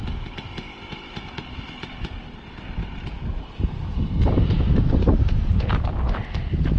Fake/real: real